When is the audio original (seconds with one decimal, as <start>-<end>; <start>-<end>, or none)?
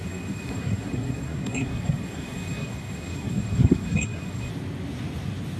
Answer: 4.5-5.6